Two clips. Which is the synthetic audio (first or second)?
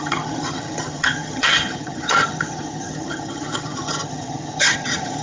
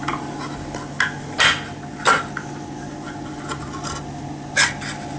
first